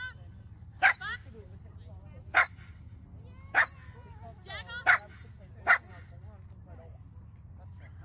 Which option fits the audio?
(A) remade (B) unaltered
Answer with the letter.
B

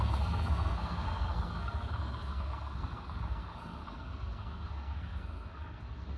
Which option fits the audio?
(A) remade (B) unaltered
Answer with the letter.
A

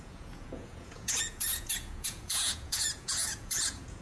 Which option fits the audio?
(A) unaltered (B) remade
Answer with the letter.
B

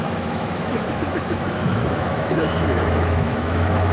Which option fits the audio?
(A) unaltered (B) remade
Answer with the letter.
B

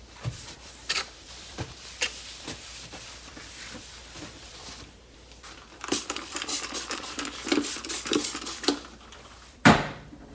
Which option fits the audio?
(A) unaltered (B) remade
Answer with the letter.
B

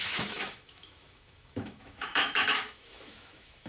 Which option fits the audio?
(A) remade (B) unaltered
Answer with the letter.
A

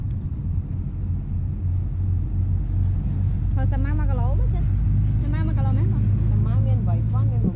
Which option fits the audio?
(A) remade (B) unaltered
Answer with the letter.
B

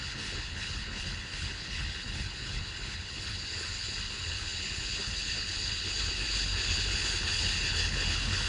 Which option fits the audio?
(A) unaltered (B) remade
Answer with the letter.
B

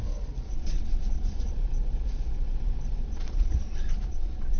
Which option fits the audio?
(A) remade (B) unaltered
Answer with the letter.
A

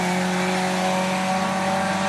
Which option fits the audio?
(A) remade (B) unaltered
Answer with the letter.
B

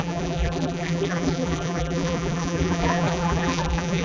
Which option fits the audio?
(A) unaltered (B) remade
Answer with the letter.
B